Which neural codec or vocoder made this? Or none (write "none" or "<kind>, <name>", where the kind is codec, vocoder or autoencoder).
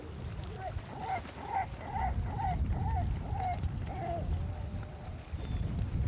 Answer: none